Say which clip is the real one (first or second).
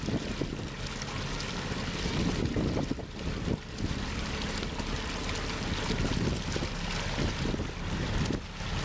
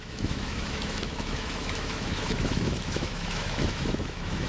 first